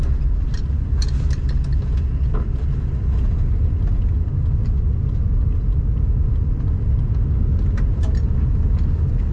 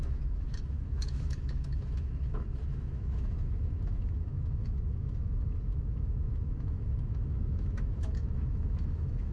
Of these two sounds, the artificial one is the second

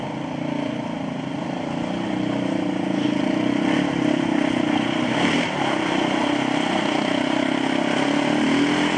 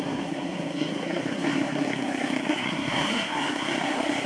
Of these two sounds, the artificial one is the second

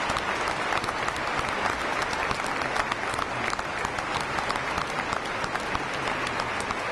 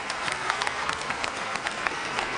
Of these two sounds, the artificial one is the second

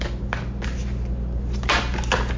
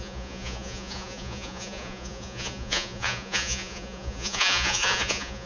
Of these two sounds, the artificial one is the second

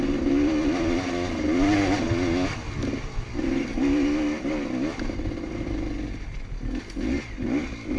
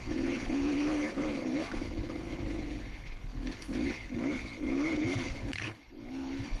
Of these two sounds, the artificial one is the second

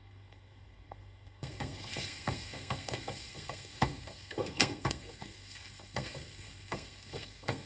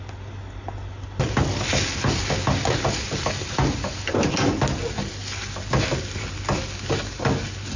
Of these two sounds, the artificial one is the first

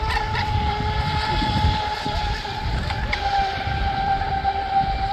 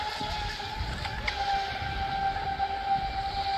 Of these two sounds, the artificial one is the first